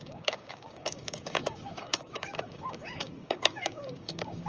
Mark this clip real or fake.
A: fake